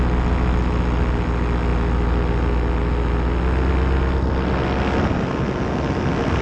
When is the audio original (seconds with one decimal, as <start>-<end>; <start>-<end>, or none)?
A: 0.0-6.4